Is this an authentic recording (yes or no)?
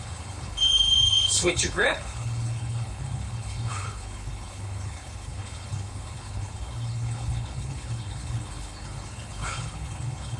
no